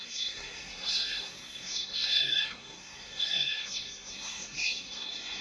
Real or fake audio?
fake